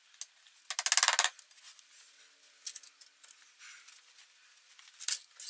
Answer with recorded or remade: recorded